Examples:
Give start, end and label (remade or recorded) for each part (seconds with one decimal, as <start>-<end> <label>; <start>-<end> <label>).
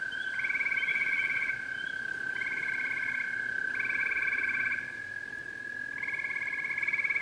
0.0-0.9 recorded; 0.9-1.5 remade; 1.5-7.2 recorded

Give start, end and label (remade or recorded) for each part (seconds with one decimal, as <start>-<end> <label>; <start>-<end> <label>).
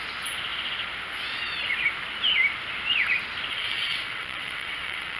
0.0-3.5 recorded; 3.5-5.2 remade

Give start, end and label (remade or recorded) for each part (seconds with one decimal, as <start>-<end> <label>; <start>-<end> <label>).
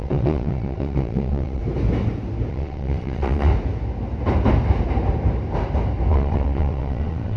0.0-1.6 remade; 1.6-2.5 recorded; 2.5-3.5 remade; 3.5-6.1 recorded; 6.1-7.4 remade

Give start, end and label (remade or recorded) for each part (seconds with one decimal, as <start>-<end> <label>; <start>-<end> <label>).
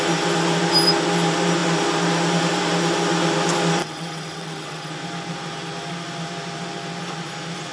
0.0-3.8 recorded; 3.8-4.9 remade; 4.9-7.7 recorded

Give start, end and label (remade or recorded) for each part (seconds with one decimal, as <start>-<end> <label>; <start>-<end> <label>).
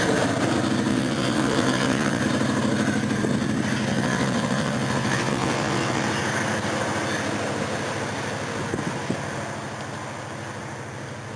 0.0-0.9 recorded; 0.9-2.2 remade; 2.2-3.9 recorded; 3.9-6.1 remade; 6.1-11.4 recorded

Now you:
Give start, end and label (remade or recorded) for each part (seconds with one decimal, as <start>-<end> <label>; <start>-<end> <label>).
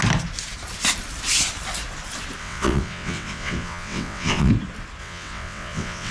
0.0-2.4 recorded; 2.4-4.5 remade; 4.5-5.0 recorded; 5.0-6.1 remade